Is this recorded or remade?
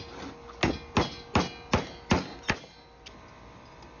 recorded